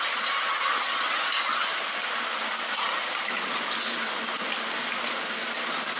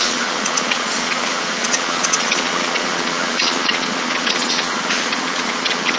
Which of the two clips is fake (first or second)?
second